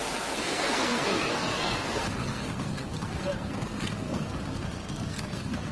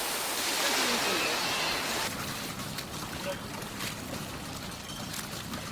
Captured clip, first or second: second